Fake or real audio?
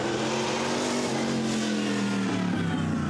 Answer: real